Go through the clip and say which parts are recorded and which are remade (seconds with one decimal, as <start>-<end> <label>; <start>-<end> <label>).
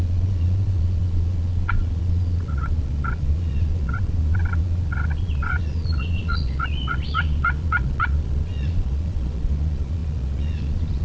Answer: 0.0-11.0 remade